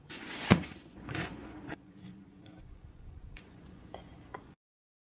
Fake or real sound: fake